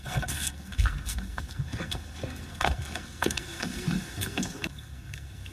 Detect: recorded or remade remade